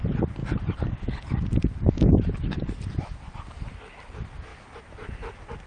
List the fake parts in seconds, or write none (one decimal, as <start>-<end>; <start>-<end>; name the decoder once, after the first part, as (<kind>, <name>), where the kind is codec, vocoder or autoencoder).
0.4-3.8 (vocoder, BigVGAN v2); 4.5-5.1